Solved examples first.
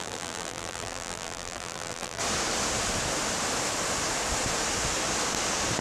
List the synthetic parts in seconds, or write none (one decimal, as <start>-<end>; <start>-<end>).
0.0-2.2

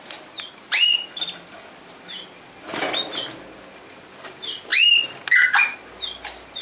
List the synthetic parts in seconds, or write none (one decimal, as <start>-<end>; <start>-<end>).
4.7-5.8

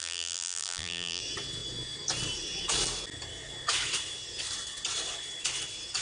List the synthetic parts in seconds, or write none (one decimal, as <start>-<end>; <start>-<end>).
0.0-1.2

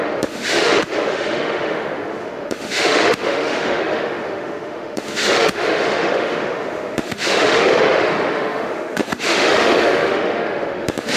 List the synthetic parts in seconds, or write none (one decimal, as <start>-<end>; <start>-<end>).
0.0-11.2

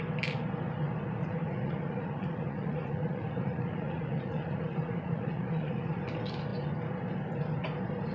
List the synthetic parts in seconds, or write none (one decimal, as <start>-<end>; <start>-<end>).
1.2-6.0

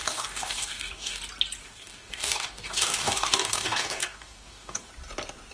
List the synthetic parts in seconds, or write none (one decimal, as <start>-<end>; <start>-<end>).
0.0-1.2; 1.6-4.9